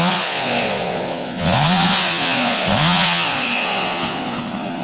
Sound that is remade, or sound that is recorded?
remade